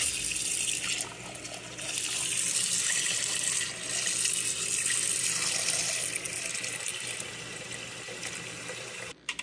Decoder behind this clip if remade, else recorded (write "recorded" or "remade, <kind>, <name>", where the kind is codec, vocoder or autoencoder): recorded